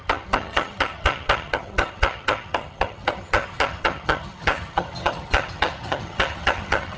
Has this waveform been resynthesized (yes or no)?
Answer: yes